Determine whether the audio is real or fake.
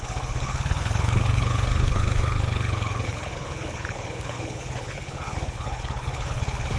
fake